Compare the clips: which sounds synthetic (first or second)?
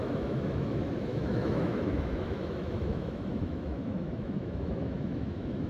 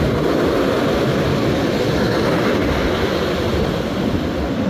first